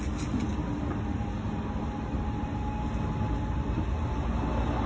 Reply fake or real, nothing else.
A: real